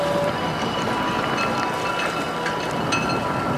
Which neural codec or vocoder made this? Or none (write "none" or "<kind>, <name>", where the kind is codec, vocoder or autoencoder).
none